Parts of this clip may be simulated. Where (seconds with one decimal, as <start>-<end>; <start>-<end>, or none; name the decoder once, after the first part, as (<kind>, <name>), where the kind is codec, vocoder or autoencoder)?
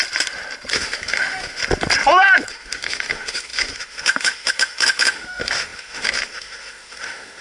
0.7-1.6 (autoencoder, DAC-VAE); 2.5-7.4